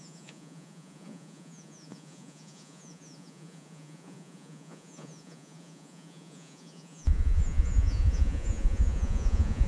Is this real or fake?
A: fake